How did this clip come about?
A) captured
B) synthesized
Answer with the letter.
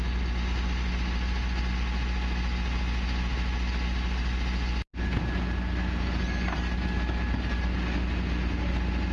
A